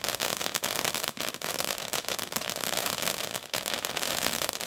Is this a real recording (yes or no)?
no